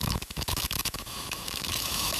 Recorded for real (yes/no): no